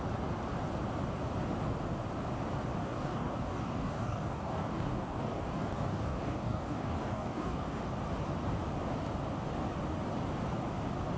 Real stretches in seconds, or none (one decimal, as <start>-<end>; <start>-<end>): 0.0-2.8; 7.8-11.2